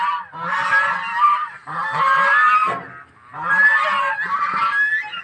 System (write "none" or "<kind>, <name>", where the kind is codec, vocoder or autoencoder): none